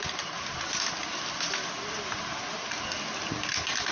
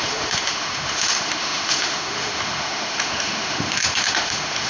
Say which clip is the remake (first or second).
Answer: second